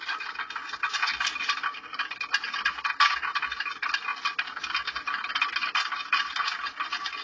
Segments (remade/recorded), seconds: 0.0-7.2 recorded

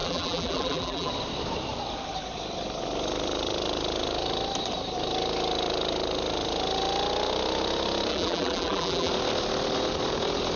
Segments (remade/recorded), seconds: 0.0-1.1 remade; 1.1-8.1 recorded; 8.1-9.1 remade; 9.1-10.6 recorded

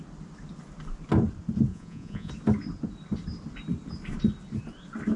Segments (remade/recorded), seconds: 0.0-1.7 recorded; 1.7-2.3 remade; 2.3-5.2 recorded

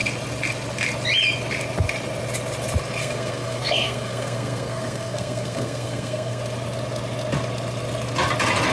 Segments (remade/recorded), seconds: 0.0-3.0 recorded; 3.0-6.4 remade; 6.4-8.7 recorded